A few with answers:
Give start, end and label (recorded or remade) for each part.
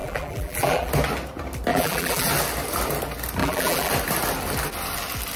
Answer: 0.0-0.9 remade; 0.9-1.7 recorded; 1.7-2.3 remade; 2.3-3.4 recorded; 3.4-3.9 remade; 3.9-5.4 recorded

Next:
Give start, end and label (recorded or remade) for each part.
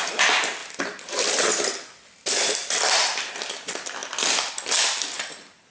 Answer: 0.0-0.6 recorded; 0.6-3.3 remade; 3.3-4.0 recorded; 4.0-4.5 remade; 4.5-5.7 recorded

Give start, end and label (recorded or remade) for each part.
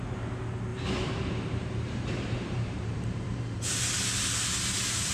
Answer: 0.0-0.7 recorded; 0.7-3.8 remade; 3.8-5.1 recorded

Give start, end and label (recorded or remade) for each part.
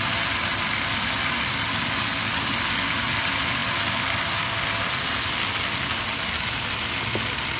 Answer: 0.0-7.6 recorded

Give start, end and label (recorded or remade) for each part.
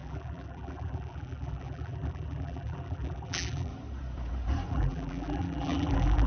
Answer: 0.0-3.7 remade; 3.7-4.7 recorded; 4.7-6.3 remade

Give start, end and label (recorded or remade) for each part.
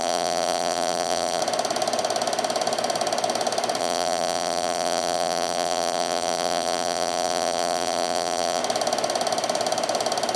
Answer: 0.0-1.4 remade; 1.4-3.8 recorded; 3.8-8.6 remade; 8.6-10.4 recorded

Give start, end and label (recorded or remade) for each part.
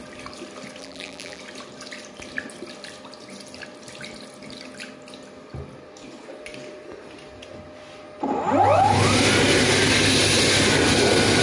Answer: 0.0-0.8 recorded; 0.8-1.4 remade; 1.4-11.4 recorded